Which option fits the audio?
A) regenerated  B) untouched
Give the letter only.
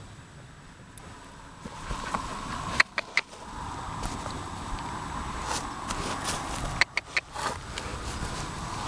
B